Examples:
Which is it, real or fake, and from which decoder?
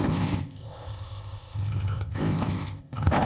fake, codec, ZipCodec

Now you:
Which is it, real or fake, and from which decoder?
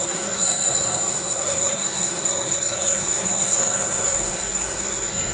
fake, codec, SNAC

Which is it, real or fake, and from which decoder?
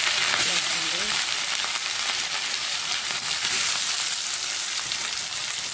fake, vocoder, BigVGAN v2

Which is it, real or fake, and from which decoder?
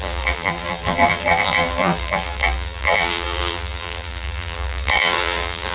fake, vocoder, BigVGAN v2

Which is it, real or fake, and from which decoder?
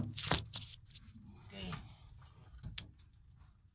real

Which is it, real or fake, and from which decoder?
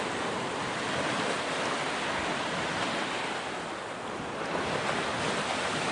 real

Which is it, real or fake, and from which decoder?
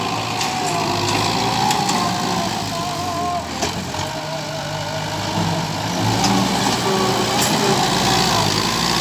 real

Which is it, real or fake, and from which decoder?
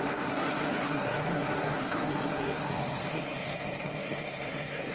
fake, codec, SNAC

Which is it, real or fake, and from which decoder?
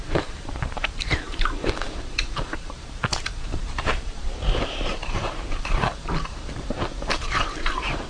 fake, vocoder, BigVGAN v2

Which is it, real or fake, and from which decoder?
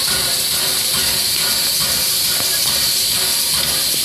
real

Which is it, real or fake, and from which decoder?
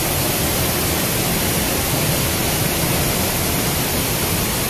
real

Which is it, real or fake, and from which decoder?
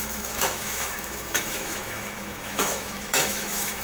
fake, autoencoder, DAC-VAE